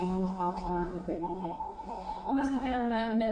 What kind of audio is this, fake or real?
fake